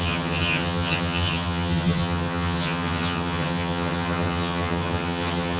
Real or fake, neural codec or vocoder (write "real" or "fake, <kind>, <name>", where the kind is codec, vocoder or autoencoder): fake, vocoder, HiFi-GAN